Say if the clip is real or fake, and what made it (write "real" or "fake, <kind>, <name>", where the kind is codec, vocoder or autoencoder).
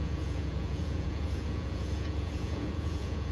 fake, vocoder, Vocos